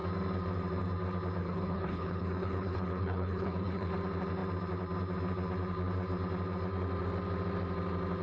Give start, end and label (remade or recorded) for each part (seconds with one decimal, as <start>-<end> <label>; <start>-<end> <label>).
0.0-1.4 recorded; 1.4-3.9 remade; 3.9-8.2 recorded